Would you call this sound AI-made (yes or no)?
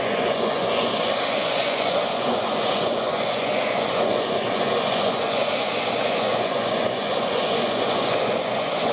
yes